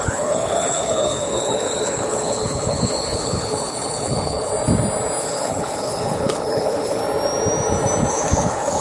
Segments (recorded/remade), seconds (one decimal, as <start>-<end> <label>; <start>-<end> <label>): 0.0-4.5 remade; 4.5-5.2 recorded; 5.2-7.0 remade; 7.0-8.1 recorded; 8.1-8.8 remade